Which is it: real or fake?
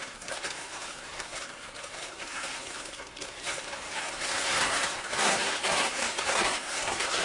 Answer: fake